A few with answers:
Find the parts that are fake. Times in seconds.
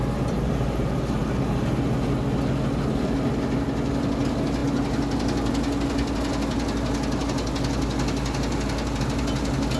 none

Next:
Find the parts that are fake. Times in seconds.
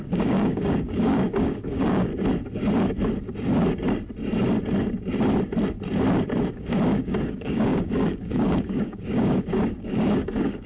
0.0-2.1 (codec, DAC); 6.5-10.7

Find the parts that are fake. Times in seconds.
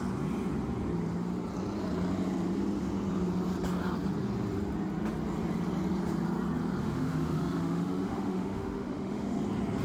6.8-9.4 (autoencoder, DAC-VAE)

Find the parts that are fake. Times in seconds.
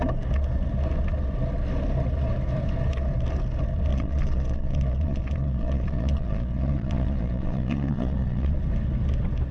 3.9-8.6 (vocoder, Vocos)